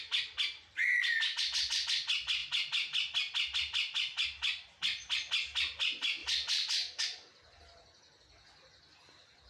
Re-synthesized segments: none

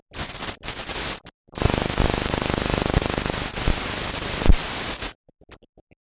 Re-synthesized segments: none